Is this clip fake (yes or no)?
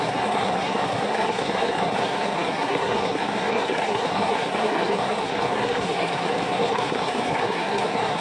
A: yes